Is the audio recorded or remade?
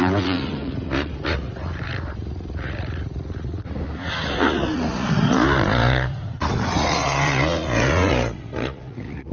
remade